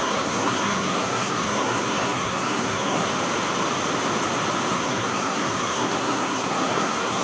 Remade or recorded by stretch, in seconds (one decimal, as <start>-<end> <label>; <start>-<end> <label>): 0.0-3.1 remade; 3.1-4.7 recorded; 4.7-7.2 remade